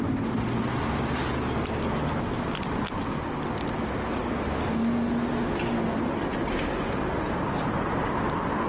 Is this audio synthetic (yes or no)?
no